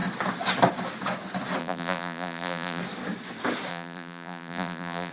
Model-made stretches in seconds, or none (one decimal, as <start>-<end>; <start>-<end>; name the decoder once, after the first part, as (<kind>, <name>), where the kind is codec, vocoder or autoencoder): 1.6-2.8 (vocoder, BigVGAN v2); 3.7-5.1